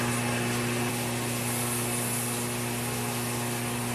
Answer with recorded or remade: recorded